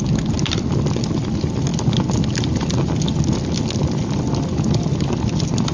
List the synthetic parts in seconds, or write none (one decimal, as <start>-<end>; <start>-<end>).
none